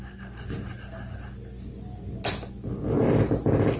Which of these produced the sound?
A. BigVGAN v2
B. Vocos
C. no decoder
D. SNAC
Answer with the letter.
C